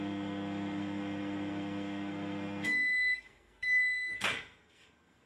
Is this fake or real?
fake